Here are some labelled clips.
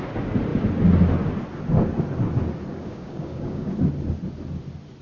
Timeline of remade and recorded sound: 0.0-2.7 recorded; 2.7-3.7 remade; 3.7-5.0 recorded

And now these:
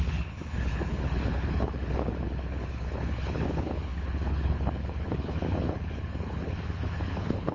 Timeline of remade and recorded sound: 0.0-7.5 remade

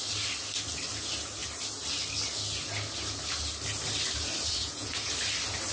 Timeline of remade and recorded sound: 0.0-4.6 recorded; 4.6-5.1 remade; 5.1-5.7 recorded